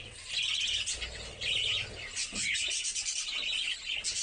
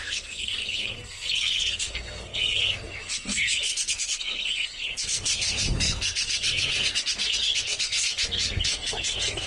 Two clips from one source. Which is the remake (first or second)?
second